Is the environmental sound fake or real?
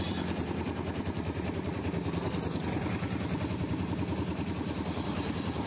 real